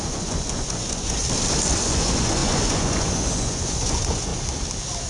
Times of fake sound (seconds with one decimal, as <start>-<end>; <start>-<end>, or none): 0.0-1.2; 1.8-4.3